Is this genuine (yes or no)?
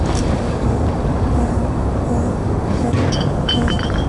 no